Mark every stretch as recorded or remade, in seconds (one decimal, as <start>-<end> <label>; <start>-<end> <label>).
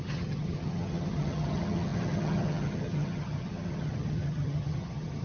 0.0-5.2 remade